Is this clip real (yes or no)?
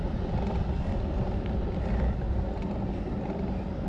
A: yes